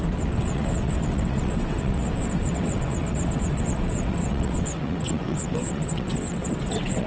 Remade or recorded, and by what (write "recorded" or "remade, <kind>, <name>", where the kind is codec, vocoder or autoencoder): remade, vocoder, WaveNeXt